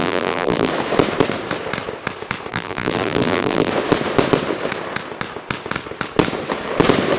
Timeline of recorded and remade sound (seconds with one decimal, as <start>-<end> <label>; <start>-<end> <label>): 0.0-0.7 remade; 0.7-2.5 recorded; 2.5-3.7 remade; 3.7-7.2 recorded